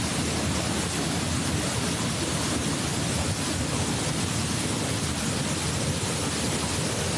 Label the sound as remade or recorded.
recorded